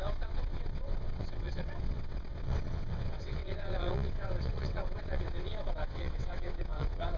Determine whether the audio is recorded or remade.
remade